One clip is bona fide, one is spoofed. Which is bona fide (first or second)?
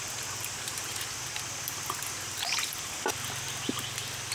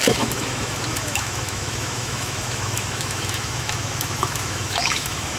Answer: first